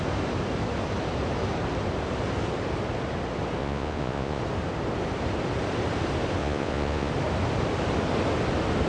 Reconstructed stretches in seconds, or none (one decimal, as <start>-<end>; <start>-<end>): 3.6-4.4; 6.4-7.1